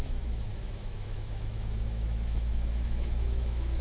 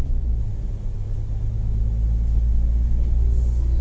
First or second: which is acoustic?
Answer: second